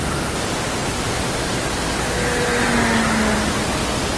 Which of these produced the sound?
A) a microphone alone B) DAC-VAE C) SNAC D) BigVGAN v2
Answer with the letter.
A